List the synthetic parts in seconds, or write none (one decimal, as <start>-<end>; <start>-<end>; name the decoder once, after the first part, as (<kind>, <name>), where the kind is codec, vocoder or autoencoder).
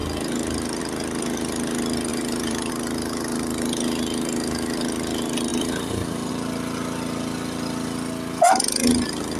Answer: 2.1-2.7 (vocoder, BigVGAN v2); 5.5-6.3